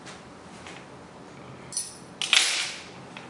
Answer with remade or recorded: recorded